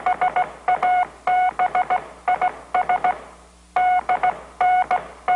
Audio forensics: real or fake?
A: real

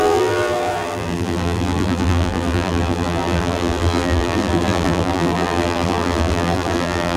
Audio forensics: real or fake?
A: fake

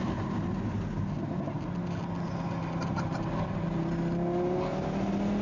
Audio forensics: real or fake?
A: real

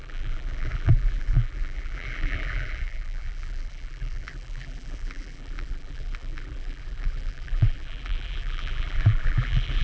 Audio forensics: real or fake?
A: fake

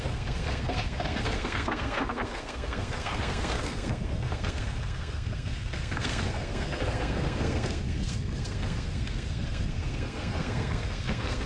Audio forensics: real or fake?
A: fake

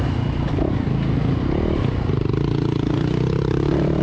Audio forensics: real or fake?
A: real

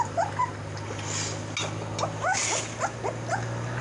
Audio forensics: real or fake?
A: real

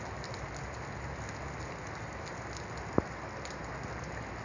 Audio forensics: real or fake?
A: real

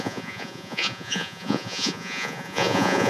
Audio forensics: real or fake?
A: fake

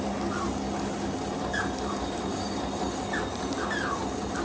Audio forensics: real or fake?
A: real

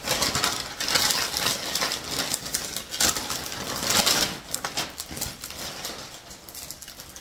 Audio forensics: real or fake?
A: real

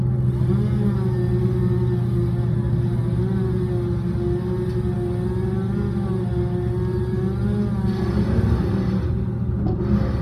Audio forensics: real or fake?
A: real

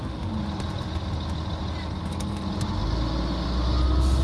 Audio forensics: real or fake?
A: real